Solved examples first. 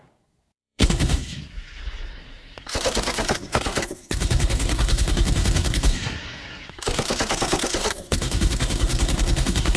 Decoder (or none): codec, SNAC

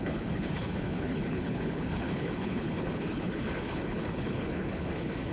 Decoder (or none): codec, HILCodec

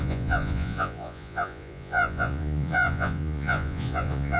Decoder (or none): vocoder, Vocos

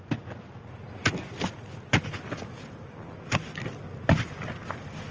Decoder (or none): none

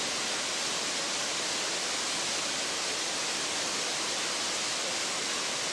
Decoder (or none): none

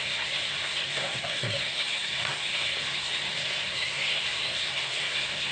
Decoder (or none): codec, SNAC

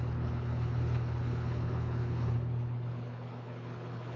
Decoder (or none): codec, HILCodec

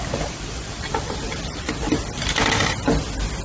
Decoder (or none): vocoder, BigVGAN v2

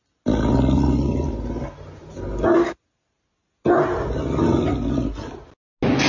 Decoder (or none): none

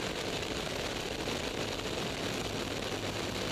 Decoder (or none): none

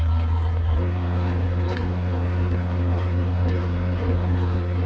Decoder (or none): codec, SNAC